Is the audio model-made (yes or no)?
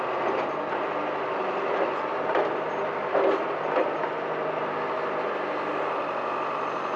no